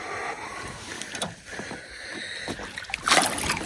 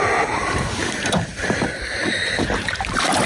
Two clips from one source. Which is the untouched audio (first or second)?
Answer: first